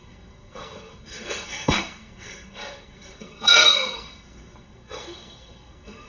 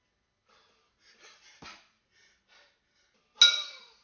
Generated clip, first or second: first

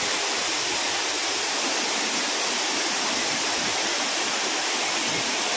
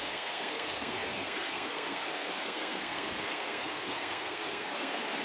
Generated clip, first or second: second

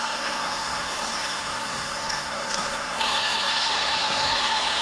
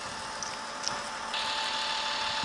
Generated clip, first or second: first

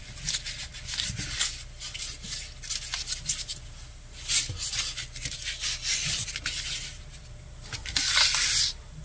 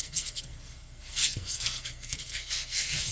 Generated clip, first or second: second